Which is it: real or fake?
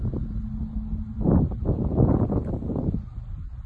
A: real